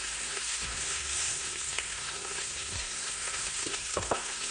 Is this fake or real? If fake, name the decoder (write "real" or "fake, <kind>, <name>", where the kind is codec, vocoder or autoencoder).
fake, codec, SNAC